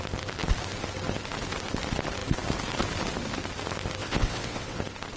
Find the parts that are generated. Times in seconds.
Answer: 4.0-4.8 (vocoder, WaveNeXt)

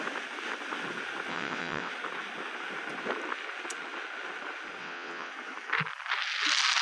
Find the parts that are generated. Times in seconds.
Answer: 1.3-1.9 (vocoder, WaveNeXt); 4.8-5.3

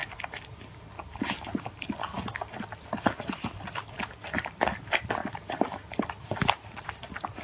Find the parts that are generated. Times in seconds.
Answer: none

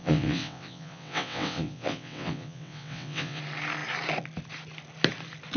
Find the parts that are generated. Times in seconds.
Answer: 0.0-3.4 (vocoder, WaveNeXt)

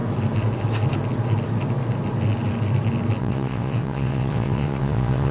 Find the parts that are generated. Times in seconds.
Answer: 3.2-5.3 (vocoder, WaveNeXt)

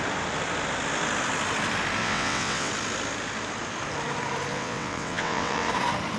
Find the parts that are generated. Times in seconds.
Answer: 2.0-2.7 (vocoder, WaveNeXt); 4.5-5.7